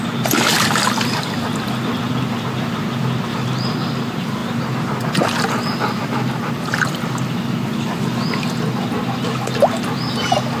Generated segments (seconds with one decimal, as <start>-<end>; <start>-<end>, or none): none